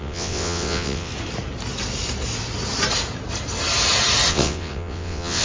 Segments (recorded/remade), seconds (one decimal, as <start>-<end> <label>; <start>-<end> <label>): 0.0-1.1 remade; 1.1-4.3 recorded; 4.3-5.4 remade